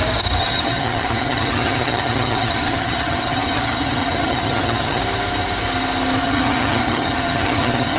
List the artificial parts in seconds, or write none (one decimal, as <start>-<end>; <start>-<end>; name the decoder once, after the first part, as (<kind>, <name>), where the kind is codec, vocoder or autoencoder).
0.4-5.0 (vocoder, HiFi-GAN); 6.2-8.0